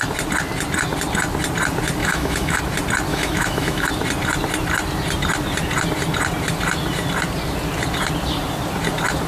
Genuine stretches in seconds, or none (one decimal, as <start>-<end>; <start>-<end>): 0.0-2.0; 2.6-3.1; 3.9-9.3

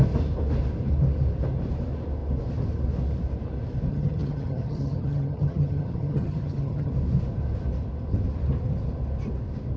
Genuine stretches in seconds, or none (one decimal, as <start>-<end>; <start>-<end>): 0.0-3.9; 6.9-9.8

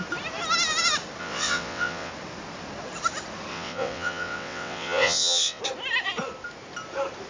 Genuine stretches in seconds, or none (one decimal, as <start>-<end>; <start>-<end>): 0.0-1.2; 2.1-3.5; 5.6-7.3

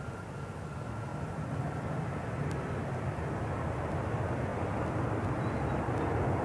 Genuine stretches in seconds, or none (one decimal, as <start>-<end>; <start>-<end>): 0.0-6.4